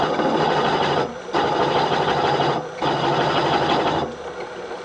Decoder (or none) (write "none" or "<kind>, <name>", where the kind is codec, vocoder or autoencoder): none